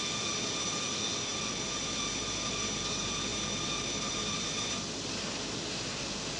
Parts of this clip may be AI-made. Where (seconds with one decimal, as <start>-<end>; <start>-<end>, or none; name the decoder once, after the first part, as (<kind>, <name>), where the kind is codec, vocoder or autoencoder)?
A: none